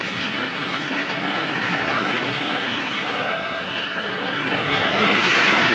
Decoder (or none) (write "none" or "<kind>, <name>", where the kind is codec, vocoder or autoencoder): codec, SNAC